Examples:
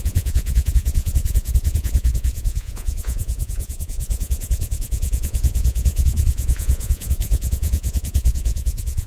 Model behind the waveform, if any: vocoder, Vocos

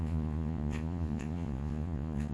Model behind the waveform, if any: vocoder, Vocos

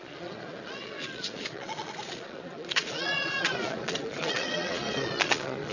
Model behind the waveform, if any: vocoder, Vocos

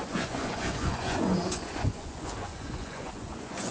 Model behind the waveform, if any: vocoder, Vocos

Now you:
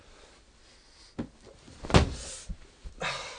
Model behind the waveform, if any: none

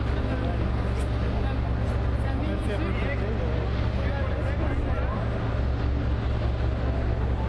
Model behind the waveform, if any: none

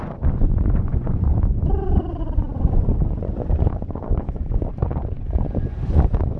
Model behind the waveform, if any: vocoder, Vocos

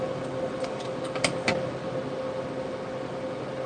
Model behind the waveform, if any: none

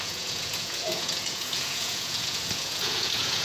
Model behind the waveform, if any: vocoder, Vocos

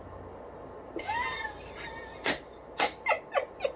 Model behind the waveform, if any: none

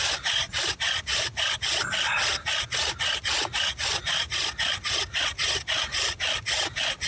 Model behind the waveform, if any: none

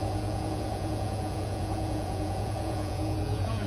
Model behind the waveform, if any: vocoder, Vocos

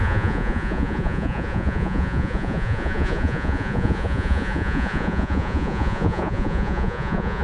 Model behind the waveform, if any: vocoder, Vocos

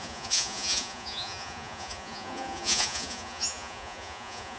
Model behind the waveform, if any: vocoder, Vocos